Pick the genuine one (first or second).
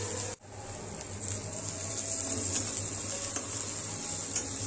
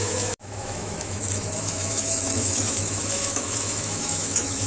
first